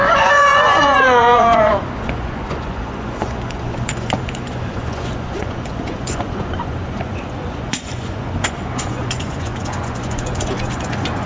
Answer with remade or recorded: remade